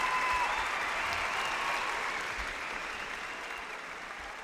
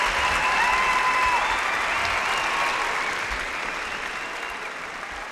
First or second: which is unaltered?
second